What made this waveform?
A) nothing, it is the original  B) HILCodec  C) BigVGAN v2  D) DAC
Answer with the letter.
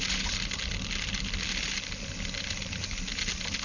A